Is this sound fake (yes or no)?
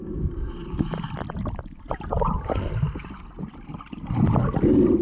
no